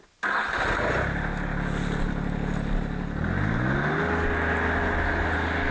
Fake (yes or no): no